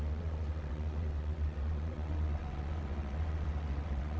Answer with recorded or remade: remade